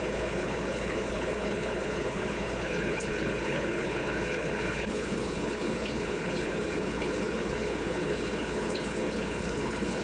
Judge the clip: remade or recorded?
remade